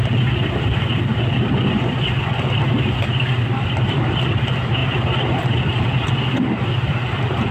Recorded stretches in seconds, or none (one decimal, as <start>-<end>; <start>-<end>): none